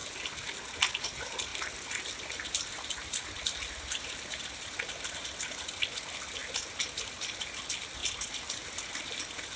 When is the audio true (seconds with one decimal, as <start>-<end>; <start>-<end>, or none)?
0.0-1.0; 6.4-7.0